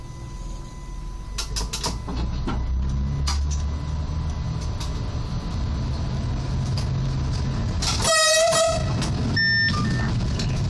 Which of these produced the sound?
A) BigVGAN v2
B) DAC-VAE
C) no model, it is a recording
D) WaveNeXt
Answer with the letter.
C